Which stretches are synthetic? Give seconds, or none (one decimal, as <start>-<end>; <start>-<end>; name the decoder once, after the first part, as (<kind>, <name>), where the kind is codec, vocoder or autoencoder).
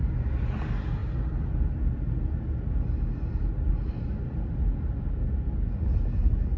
none